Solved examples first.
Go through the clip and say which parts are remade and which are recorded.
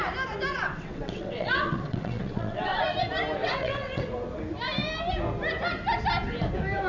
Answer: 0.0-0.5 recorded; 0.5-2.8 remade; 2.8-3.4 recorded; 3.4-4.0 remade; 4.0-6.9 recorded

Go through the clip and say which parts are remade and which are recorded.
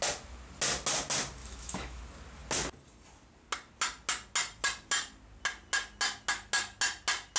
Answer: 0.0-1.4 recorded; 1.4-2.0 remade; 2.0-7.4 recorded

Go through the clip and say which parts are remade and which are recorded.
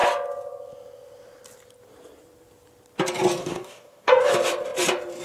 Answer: 0.0-3.4 recorded; 3.4-4.3 remade; 4.3-5.2 recorded